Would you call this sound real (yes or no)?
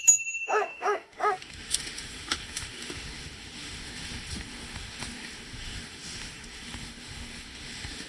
no